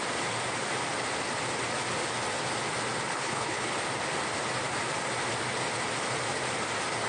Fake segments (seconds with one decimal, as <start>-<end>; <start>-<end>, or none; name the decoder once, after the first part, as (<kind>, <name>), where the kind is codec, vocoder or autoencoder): 3.1-3.7 (codec, HILCodec)